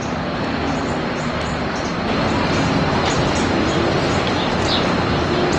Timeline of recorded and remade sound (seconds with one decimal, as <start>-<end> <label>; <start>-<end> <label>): 0.0-5.6 recorded